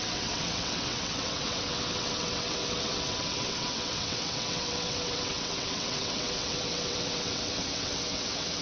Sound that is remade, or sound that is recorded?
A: remade